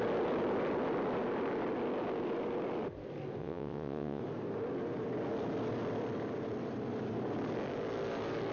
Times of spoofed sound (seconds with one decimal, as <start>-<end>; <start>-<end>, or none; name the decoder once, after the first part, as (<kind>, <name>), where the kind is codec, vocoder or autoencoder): 3.4-4.2 (vocoder, WaveNeXt)